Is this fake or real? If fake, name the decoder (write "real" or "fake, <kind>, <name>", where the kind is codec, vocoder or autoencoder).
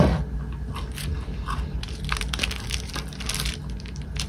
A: real